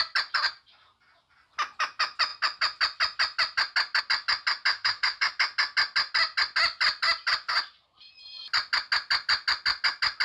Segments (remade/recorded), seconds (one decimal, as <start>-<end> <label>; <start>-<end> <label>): 0.0-4.7 recorded; 4.7-5.3 remade; 5.3-10.2 recorded